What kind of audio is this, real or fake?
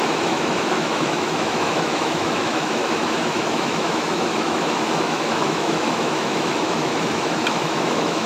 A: fake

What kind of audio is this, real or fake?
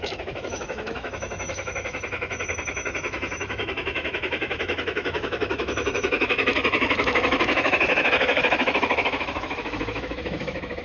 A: fake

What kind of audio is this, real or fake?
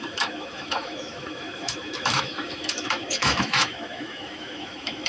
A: fake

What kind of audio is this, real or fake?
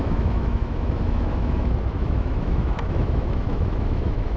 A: fake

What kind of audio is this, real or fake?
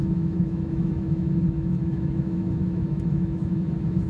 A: fake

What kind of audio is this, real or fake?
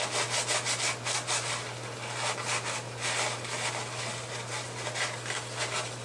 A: real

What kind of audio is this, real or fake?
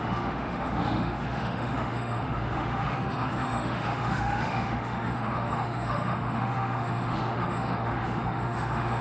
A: fake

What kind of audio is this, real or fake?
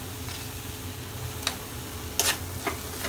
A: real